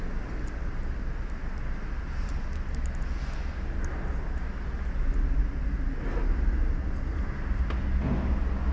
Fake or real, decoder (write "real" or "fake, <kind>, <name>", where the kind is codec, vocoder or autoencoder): real